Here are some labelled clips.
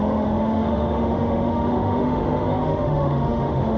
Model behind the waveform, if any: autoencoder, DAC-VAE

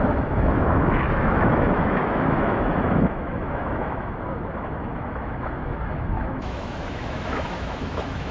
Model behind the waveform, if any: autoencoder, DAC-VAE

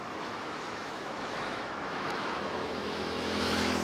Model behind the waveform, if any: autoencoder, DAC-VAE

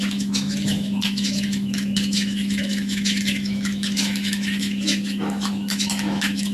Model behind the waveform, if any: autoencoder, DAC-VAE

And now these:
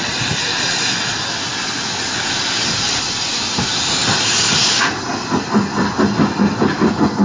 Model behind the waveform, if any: none